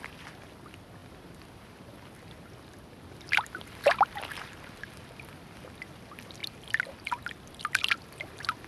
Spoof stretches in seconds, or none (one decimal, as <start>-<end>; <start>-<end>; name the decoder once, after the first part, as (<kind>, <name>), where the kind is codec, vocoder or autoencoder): none